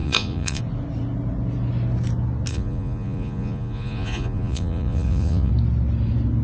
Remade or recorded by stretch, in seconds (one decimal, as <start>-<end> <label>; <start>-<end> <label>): 0.0-0.6 remade; 0.6-2.5 recorded; 2.5-5.5 remade; 5.5-6.4 recorded